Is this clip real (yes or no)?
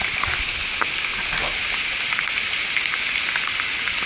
yes